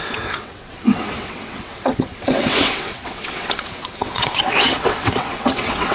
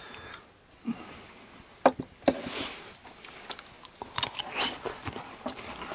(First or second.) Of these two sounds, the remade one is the first